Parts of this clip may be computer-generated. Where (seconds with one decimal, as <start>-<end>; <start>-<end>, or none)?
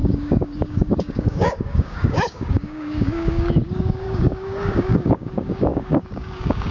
0.0-6.7